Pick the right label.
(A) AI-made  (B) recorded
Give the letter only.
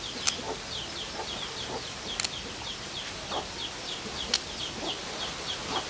B